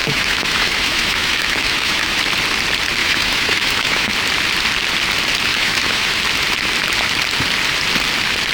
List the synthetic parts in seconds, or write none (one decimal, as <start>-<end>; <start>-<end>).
0.0-2.2; 3.0-4.1; 5.5-6.2